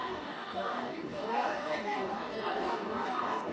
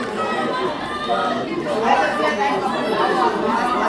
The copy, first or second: first